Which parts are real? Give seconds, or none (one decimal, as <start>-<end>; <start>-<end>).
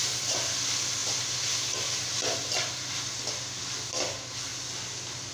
0.0-5.3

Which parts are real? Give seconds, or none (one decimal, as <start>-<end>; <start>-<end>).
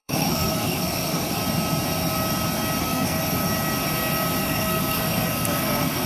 1.4-2.8; 3.2-4.4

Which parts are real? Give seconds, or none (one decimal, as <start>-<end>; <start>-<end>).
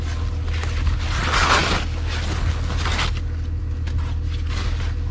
0.0-5.1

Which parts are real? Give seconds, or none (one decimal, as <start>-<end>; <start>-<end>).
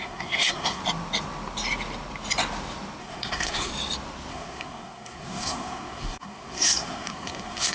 0.8-3.0; 3.7-4.3